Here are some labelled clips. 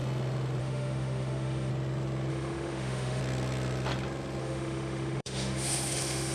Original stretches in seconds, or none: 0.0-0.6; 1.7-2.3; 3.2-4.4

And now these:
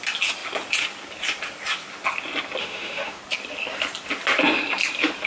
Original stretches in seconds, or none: 0.0-2.6; 3.2-5.3

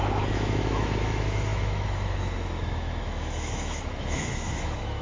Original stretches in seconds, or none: none